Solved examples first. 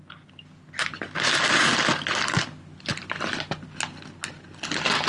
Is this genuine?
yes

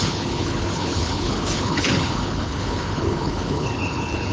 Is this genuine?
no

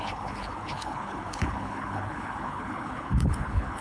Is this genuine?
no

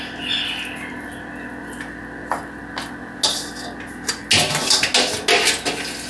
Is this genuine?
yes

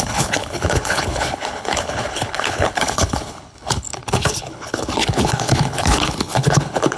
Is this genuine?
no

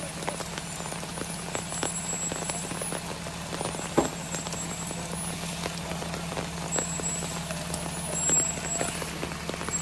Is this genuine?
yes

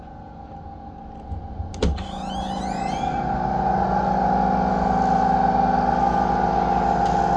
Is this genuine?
yes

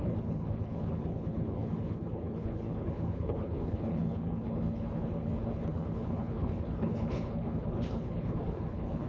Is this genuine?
no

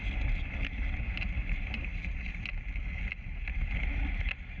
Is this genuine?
yes